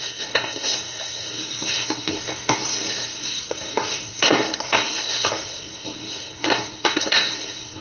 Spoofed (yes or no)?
yes